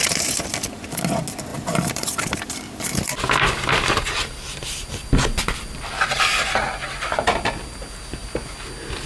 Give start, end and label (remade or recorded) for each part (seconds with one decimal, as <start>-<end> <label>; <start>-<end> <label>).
0.0-1.5 recorded; 1.5-5.9 remade; 5.9-9.1 recorded